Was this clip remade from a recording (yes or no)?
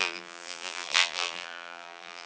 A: yes